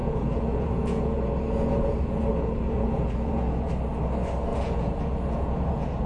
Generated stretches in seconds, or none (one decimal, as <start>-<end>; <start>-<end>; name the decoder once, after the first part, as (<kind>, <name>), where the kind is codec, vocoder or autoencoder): 0.0-3.7 (vocoder, Vocos); 4.5-6.1